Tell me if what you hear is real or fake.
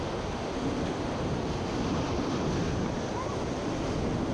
real